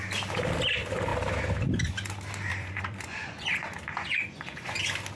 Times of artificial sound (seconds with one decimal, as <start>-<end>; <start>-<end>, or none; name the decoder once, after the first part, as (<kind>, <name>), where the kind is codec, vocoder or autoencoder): 2.5-3.5 (vocoder, Vocos); 3.9-4.8